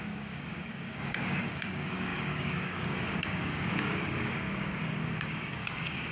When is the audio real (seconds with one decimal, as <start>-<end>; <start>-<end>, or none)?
none